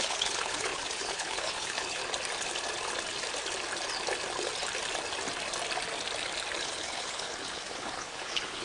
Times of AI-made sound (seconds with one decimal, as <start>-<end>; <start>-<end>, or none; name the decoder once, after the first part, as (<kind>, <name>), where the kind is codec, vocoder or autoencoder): 0.0-2.0 (codec, HILCodec); 6.6-8.6